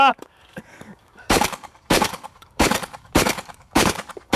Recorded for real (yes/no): no